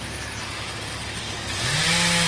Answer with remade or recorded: recorded